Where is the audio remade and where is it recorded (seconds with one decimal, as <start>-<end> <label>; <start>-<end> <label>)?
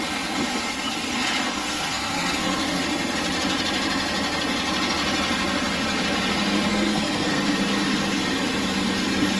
0.0-1.6 recorded; 1.6-2.8 remade; 2.8-6.7 recorded; 6.7-7.4 remade; 7.4-9.4 recorded